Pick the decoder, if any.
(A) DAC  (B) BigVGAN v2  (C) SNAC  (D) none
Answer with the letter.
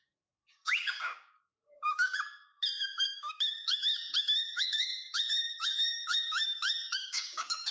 A